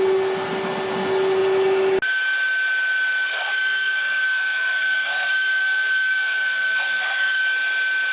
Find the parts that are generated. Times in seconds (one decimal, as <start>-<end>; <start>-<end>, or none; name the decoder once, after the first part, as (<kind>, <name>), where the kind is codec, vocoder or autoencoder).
3.3-7.4 (codec, SNAC)